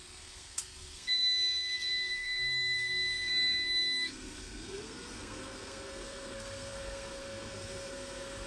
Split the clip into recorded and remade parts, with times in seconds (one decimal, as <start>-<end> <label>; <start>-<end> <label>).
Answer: 0.0-8.5 remade